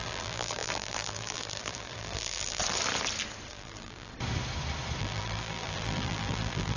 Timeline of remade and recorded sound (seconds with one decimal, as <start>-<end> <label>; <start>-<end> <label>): 0.0-2.6 remade; 2.6-3.5 recorded; 3.5-4.1 remade; 4.1-5.0 recorded; 5.0-6.8 remade

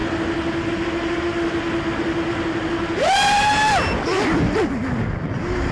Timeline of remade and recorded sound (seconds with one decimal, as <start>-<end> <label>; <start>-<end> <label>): 0.0-0.7 remade; 0.7-5.7 recorded

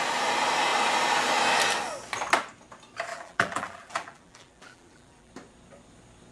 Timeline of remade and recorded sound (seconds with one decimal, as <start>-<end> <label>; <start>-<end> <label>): 0.0-3.1 recorded; 3.1-5.3 remade; 5.3-6.3 recorded

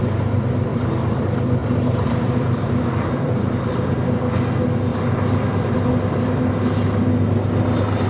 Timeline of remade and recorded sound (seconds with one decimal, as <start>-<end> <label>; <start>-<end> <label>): 0.0-0.7 recorded; 0.7-1.2 remade; 1.2-1.6 recorded; 1.6-3.9 remade; 3.9-8.1 recorded

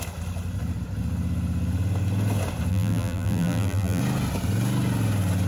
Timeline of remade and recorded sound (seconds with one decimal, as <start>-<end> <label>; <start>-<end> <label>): 0.0-2.7 recorded; 2.7-4.0 remade; 4.0-5.5 recorded